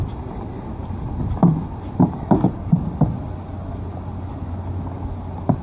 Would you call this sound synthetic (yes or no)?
no